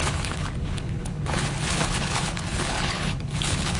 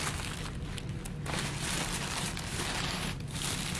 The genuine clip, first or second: second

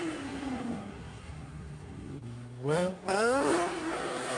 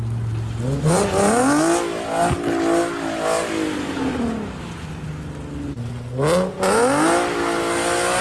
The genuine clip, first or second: second